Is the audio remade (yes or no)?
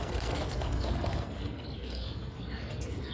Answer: yes